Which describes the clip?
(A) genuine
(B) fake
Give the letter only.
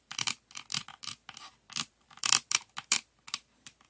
B